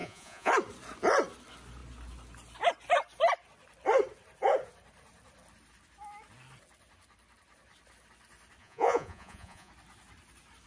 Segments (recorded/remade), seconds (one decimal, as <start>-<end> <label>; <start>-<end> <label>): 0.0-0.5 remade; 0.5-8.6 recorded; 8.6-9.7 remade; 9.7-10.7 recorded